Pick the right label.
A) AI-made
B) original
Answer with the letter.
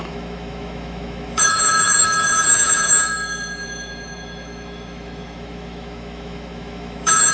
A